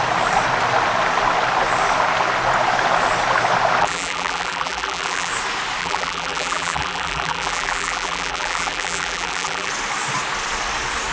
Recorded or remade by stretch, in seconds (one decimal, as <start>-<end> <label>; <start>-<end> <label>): 0.0-3.8 recorded; 3.8-5.3 remade; 5.3-5.8 recorded; 5.8-9.7 remade; 9.7-11.1 recorded

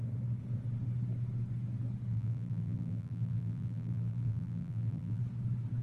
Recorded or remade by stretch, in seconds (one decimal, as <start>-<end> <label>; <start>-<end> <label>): 0.0-2.1 recorded; 2.1-5.2 remade; 5.2-5.8 recorded